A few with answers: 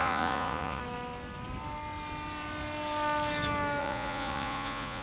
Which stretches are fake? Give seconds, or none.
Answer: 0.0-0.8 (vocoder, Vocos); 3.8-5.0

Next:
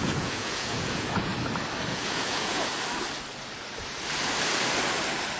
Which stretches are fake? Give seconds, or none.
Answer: 0.0-1.3 (vocoder, Vocos); 1.9-2.7

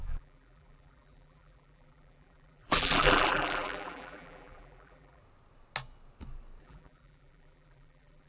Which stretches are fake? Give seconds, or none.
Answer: 0.0-5.2 (vocoder, BigVGAN v2); 6.6-8.3

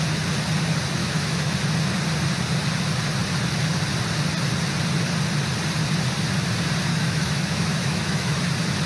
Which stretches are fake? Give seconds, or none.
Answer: 1.0-1.5 (autoencoder, DAC-VAE); 6.9-8.4

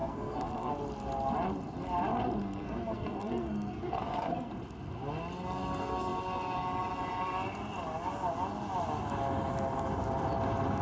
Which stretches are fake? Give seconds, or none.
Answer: 0.0-0.7 (codec, SNAC); 2.4-4.5